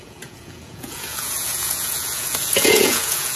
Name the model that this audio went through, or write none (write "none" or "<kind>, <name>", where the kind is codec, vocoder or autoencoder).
vocoder, Vocos